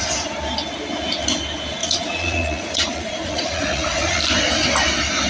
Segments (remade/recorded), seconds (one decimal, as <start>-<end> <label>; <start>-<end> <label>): 0.0-1.8 recorded; 1.8-4.2 remade; 4.2-5.3 recorded